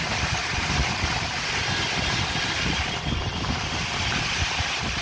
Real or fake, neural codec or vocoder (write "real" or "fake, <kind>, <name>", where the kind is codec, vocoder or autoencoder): real